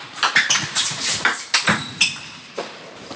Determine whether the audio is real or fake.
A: fake